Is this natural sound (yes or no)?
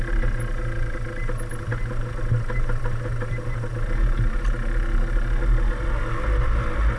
yes